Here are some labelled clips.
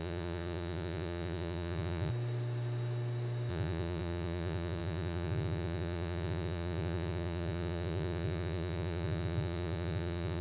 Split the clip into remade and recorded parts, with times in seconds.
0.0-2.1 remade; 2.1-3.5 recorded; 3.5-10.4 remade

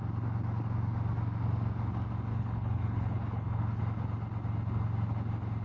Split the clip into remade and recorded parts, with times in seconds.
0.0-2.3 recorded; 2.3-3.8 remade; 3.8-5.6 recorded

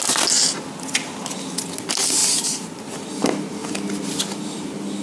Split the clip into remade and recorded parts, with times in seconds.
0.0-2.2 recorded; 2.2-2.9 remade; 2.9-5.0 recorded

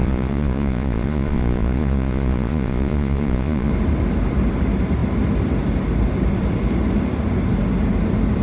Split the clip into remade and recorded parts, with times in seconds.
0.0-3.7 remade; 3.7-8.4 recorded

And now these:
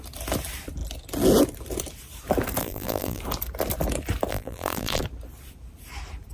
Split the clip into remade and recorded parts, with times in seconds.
0.0-2.6 recorded; 2.6-3.2 remade; 3.2-4.3 recorded; 4.3-5.0 remade; 5.0-6.3 recorded